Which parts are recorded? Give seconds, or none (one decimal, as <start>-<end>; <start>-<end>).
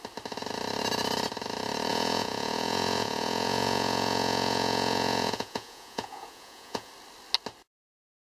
0.0-1.9; 6.9-8.4